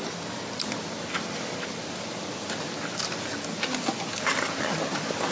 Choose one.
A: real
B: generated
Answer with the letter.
A